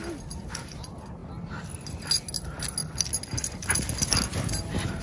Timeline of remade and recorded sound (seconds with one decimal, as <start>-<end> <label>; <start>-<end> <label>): 0.0-5.0 recorded